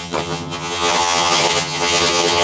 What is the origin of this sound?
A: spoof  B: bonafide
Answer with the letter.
A